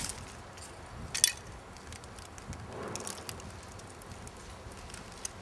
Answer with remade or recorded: recorded